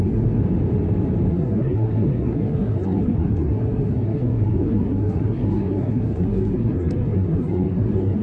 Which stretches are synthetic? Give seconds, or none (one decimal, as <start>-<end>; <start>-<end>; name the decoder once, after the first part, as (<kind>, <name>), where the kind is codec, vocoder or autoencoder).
0.0-0.4 (codec, SNAC); 1.3-8.2